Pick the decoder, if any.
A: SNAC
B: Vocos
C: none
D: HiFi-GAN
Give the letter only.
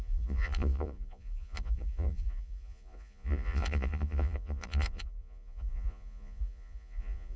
B